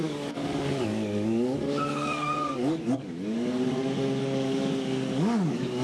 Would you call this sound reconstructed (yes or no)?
yes